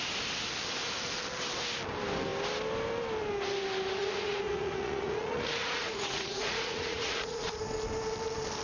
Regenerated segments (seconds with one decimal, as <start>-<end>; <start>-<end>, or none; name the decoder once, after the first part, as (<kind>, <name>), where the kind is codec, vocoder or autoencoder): 4.0-7.5 (vocoder, Vocos)